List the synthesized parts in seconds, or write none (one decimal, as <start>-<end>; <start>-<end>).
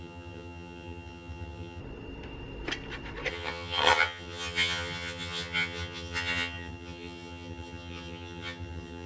0.0-1.8; 3.3-9.1